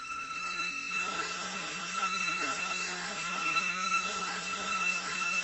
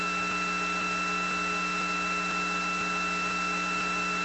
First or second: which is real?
second